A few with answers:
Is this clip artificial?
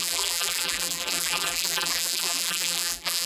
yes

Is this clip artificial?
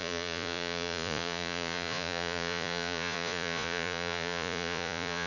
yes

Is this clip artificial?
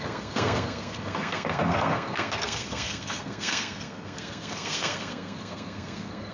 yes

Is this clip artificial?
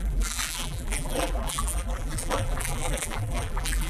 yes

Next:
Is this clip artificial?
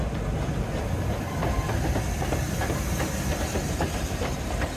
no